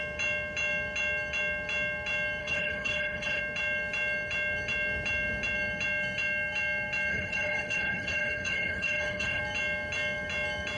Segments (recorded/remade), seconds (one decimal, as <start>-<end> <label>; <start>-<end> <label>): 0.0-2.4 recorded; 2.4-3.4 remade; 3.4-7.1 recorded; 7.1-9.4 remade; 9.4-10.8 recorded